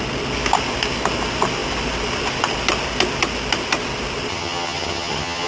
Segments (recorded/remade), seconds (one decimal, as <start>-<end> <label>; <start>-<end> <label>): 0.0-4.3 recorded; 4.3-5.5 remade

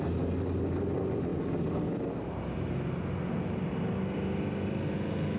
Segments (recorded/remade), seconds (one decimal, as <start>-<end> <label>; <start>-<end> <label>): 0.0-5.4 recorded

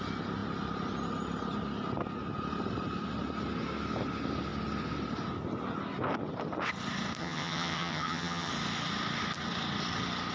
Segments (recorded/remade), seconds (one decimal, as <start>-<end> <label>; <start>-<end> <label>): 0.0-7.2 recorded; 7.2-8.5 remade; 8.5-10.3 recorded